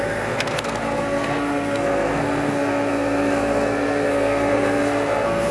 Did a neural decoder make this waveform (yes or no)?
yes